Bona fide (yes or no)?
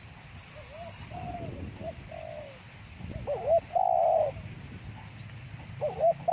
yes